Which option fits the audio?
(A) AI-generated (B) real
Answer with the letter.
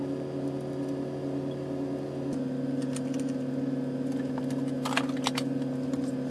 B